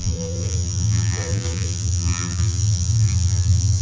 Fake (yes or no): yes